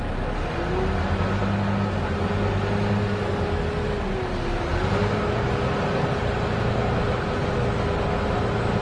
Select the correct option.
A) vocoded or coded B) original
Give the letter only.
B